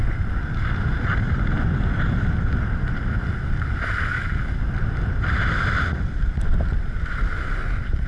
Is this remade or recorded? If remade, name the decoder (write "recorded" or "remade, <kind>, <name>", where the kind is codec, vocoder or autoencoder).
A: recorded